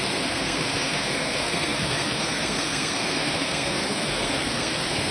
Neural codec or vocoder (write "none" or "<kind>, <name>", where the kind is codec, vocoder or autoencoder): codec, SNAC